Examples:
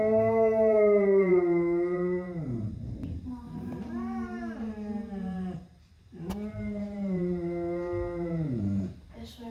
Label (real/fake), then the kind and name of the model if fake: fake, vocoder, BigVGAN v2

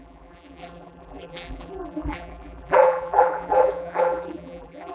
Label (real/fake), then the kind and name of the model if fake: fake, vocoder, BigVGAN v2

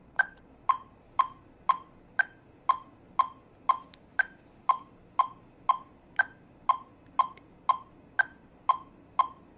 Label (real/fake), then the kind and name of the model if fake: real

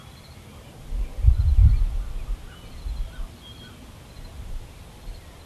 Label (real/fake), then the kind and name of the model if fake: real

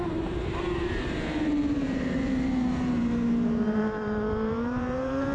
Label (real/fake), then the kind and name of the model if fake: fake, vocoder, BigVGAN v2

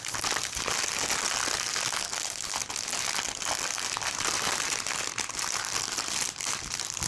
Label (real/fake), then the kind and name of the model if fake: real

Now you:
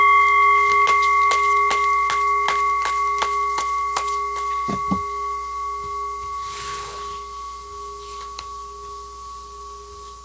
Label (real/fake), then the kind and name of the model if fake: real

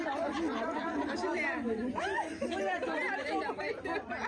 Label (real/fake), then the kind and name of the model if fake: fake, vocoder, BigVGAN v2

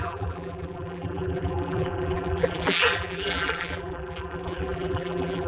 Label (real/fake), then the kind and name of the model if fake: fake, vocoder, BigVGAN v2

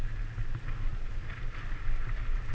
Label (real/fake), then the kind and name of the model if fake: real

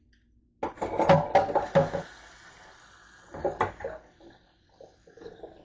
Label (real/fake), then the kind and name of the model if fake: real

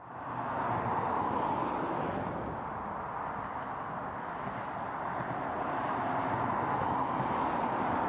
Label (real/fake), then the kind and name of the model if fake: real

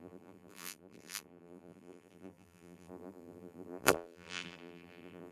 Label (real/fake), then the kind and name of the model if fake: fake, vocoder, BigVGAN v2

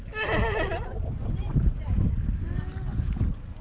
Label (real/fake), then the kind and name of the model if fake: real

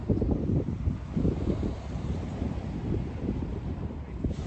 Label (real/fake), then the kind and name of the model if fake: real